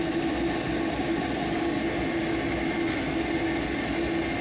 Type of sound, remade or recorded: recorded